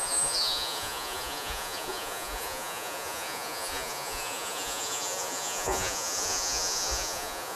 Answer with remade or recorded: remade